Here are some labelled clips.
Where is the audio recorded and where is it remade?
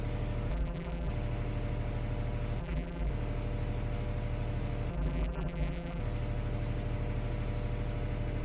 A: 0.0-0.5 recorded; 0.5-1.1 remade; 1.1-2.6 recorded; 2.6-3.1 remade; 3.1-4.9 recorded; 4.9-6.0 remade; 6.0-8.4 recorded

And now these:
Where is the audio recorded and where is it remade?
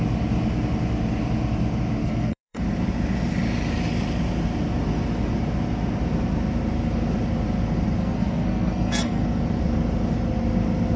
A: 0.0-2.0 recorded; 2.0-2.6 remade; 2.6-8.0 recorded; 8.0-9.2 remade; 9.2-11.0 recorded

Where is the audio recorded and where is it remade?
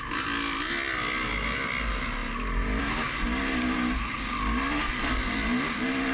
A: 0.0-6.1 recorded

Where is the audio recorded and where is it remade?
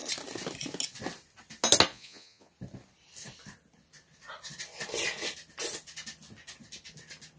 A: 0.0-1.9 recorded; 1.9-2.5 remade; 2.5-7.4 recorded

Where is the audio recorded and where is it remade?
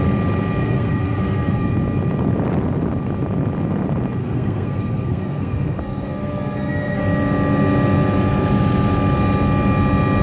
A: 0.0-0.6 recorded; 0.6-1.7 remade; 1.7-4.2 recorded; 4.2-7.0 remade; 7.0-10.2 recorded